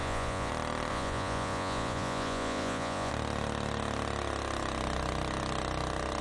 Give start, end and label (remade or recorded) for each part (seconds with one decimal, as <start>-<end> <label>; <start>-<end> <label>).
0.0-0.5 remade; 0.5-0.9 recorded; 0.9-3.1 remade; 3.1-6.2 recorded